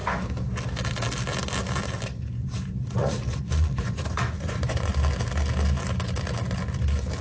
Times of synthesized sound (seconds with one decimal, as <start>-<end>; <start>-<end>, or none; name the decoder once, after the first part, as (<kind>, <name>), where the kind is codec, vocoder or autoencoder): 3.0-4.9 (vocoder, Vocos)